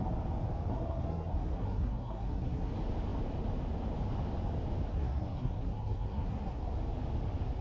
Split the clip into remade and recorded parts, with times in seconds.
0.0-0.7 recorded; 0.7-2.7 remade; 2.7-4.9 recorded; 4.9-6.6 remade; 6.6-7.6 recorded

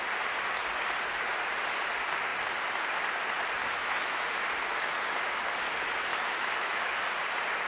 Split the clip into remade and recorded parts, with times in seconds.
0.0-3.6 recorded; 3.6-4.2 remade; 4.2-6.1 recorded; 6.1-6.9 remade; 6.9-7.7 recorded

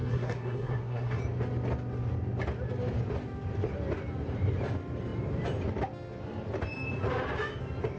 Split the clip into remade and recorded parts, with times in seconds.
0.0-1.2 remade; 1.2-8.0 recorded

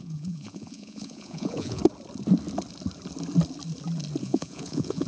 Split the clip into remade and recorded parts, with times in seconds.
0.0-1.8 remade; 1.8-4.2 recorded; 4.2-5.1 remade

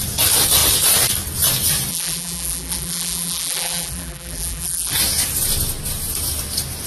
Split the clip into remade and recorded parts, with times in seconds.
0.0-1.9 recorded; 1.9-4.9 remade; 4.9-6.9 recorded